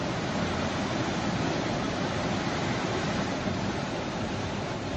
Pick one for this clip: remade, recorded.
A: recorded